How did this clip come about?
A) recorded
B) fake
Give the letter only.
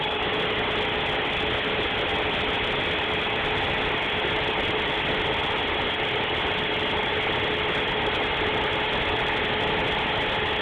A